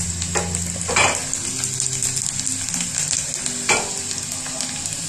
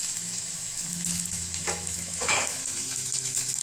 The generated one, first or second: second